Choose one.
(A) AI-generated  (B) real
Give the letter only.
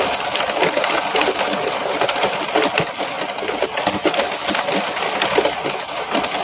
B